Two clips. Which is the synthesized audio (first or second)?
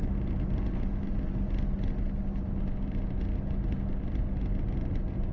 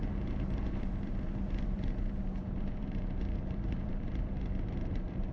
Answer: second